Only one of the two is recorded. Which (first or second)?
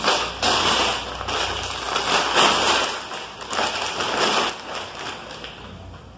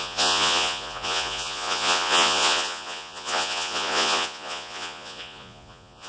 first